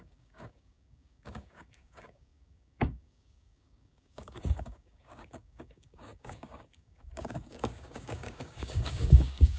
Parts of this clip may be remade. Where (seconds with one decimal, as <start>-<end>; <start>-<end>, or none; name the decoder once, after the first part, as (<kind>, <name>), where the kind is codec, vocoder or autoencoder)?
0.0-9.6 (codec, DAC)